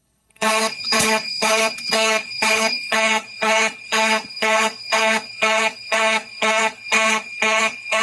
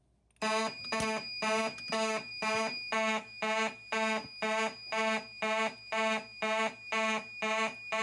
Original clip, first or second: second